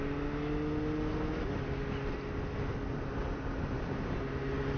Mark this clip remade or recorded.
recorded